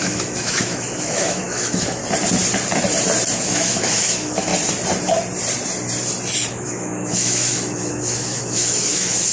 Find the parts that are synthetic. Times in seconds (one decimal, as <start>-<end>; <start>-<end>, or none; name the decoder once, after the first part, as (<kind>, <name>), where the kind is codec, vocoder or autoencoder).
0.0-2.0 (autoencoder, DAC-VAE); 3.4-4.5; 6.5-9.3